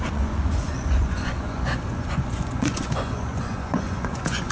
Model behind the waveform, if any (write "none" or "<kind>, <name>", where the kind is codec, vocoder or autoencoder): vocoder, Vocos